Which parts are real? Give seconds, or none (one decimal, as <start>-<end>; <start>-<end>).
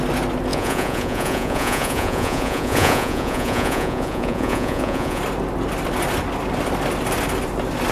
0.0-0.5; 5.2-7.9